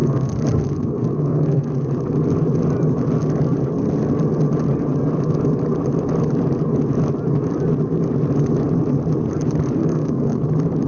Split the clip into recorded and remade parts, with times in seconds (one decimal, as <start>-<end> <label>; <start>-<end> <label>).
0.0-1.7 remade; 1.7-9.8 recorded; 9.8-10.4 remade; 10.4-10.9 recorded